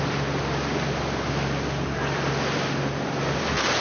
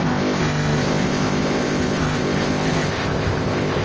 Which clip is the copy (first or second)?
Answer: second